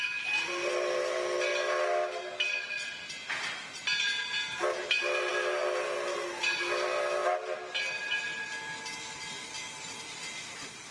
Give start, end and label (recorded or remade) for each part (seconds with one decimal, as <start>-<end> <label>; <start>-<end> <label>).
0.0-10.9 recorded